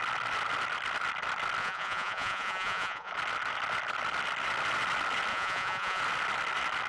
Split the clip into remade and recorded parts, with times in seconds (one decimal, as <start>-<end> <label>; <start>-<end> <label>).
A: 0.0-1.6 recorded; 1.6-3.1 remade; 3.1-5.3 recorded; 5.3-6.0 remade; 6.0-6.9 recorded